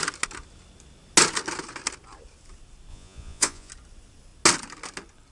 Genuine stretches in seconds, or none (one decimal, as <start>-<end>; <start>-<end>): 0.0-2.9; 3.7-5.3

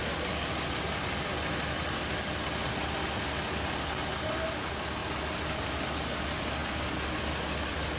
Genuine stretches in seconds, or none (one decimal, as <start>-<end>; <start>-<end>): 0.0-8.0